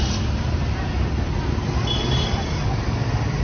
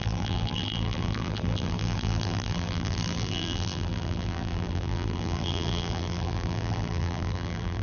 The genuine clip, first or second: first